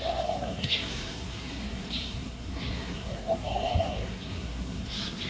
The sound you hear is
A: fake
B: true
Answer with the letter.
A